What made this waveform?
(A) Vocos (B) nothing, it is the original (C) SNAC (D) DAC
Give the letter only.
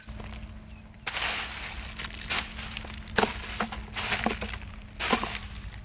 B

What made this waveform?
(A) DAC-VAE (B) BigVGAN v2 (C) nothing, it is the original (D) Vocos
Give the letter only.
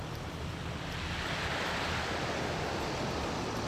C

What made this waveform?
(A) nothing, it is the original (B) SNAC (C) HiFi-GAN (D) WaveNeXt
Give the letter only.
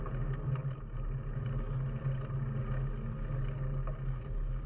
A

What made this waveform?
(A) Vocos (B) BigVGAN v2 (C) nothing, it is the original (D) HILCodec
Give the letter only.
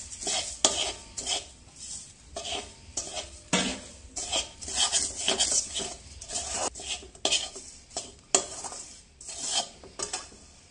C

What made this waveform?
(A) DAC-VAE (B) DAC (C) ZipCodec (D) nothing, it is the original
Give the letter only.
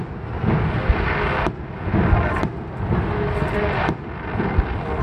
D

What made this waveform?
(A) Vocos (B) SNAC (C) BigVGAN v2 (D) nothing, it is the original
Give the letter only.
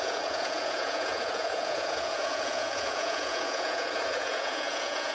A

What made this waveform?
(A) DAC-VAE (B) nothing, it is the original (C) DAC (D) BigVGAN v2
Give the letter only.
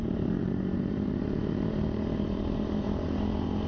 D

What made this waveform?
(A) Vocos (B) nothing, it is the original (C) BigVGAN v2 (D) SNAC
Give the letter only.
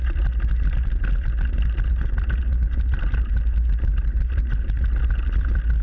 B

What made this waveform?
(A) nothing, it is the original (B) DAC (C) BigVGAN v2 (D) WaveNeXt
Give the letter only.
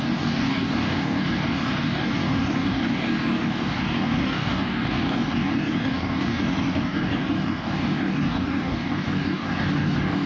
B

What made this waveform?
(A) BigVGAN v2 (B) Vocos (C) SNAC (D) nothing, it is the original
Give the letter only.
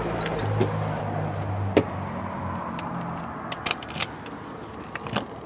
D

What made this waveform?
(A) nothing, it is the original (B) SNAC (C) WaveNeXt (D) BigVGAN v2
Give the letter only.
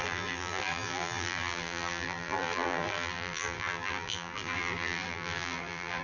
D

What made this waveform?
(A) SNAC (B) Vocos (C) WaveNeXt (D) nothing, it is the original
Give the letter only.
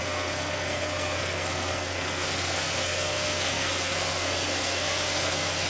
A